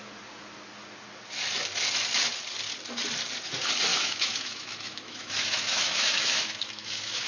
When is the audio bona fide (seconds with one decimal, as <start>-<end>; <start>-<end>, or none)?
0.0-3.9